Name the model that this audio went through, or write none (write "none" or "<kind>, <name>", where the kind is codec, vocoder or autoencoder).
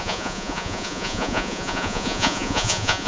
vocoder, Vocos